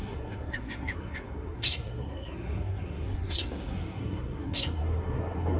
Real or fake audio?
fake